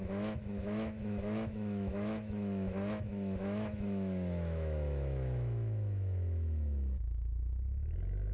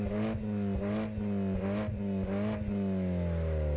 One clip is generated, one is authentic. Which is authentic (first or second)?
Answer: second